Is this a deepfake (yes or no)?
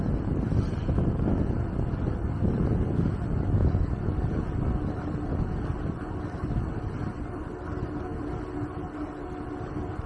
no